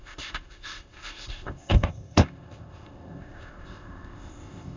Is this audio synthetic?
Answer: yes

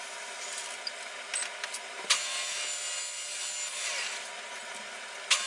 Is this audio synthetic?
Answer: no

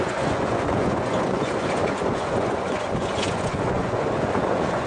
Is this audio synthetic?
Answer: yes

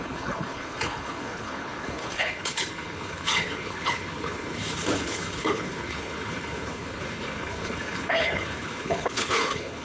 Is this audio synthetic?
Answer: yes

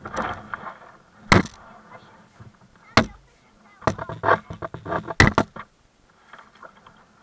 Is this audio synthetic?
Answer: no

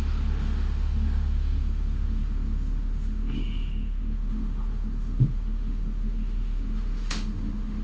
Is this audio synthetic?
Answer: yes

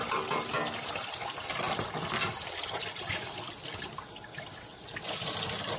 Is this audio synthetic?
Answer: no